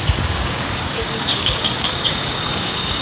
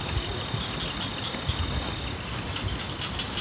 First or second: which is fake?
first